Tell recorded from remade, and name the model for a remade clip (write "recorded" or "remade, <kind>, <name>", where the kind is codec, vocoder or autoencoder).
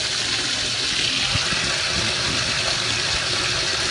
recorded